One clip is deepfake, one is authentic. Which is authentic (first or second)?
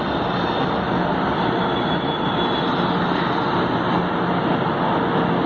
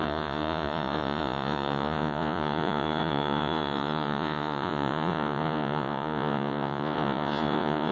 first